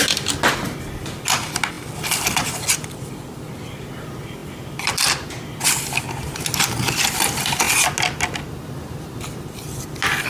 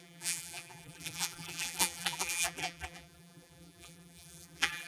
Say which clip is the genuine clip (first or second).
first